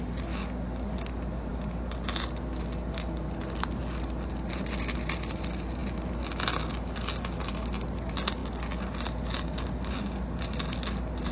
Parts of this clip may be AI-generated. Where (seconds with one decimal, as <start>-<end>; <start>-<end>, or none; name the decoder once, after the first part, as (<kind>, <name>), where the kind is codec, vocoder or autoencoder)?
none